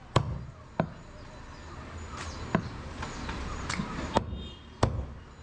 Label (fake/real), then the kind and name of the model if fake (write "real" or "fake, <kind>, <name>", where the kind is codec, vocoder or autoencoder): real